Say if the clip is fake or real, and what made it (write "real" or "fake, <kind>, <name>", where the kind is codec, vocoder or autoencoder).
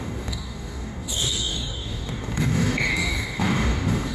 fake, codec, DAC